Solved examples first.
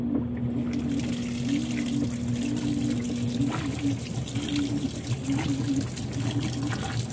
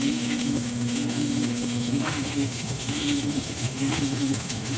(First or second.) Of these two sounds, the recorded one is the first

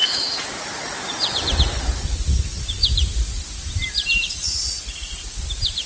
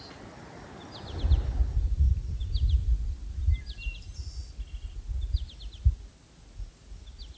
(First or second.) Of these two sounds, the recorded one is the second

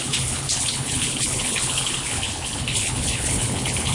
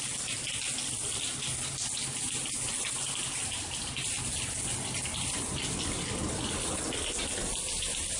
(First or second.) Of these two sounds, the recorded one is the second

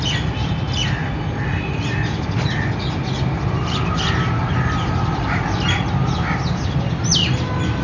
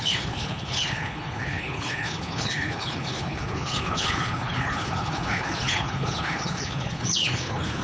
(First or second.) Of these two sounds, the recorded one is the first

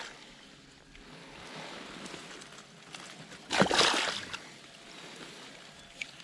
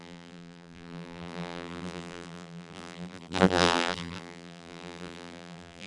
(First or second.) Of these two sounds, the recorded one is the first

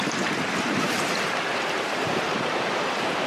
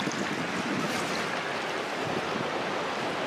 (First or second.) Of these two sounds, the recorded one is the second